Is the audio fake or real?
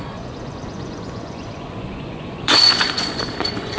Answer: fake